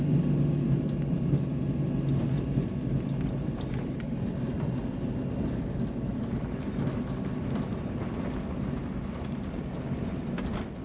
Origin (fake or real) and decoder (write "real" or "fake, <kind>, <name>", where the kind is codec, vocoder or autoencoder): real